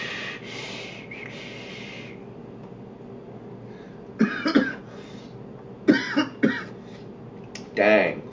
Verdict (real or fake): real